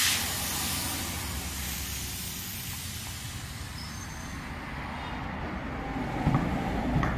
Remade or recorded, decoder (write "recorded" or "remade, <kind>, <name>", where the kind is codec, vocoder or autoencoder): recorded